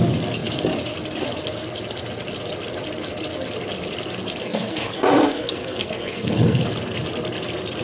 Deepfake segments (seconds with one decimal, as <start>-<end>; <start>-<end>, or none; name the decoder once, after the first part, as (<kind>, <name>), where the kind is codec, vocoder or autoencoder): 4.4-6.6 (codec, SNAC)